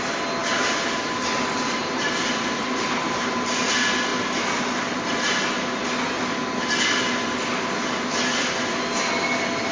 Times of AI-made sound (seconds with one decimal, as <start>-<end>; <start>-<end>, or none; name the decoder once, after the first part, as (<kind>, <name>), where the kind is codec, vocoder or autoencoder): 0.4-3.5 (vocoder, BigVGAN v2)